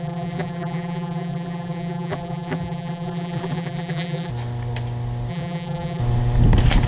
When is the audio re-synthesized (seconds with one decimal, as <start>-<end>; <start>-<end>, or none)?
0.0-4.3; 5.3-6.0